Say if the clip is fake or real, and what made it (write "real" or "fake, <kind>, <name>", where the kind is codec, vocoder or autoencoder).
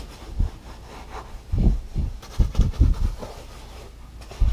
real